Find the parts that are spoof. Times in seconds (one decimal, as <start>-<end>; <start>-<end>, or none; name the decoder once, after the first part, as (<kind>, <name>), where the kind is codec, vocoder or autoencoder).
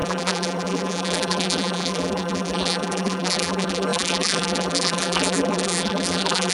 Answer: 0.0-6.5 (vocoder, BigVGAN v2)